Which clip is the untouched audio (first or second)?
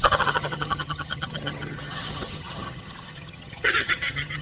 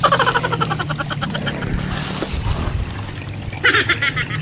second